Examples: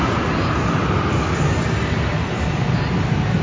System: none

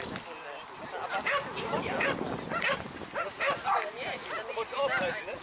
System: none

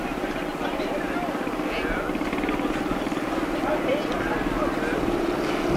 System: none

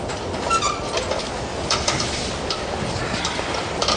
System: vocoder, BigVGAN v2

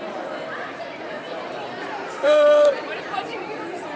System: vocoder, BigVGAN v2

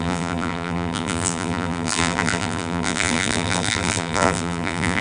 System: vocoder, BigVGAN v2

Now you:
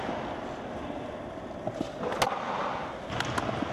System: none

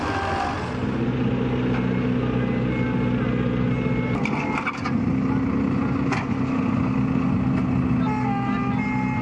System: none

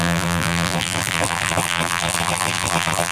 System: vocoder, BigVGAN v2